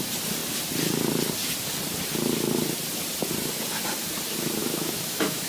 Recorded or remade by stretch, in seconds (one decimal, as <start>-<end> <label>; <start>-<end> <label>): 0.0-4.6 recorded; 4.6-5.5 remade